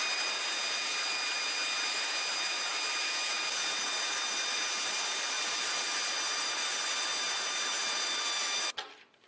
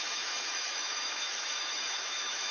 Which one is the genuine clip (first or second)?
first